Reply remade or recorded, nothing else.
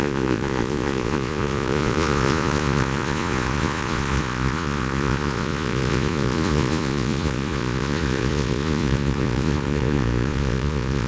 remade